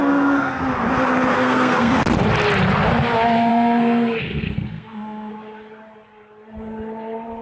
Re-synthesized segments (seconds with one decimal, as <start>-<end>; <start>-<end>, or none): 0.0-0.6; 1.3-1.9; 3.5-5.3